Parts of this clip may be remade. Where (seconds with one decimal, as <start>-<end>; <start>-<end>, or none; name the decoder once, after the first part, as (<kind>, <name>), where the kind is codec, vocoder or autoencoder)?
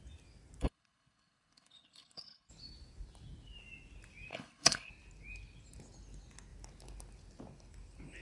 0.6-2.5 (codec, HILCodec); 4.3-4.9